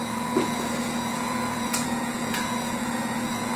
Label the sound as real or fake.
fake